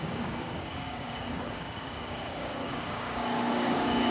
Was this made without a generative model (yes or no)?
no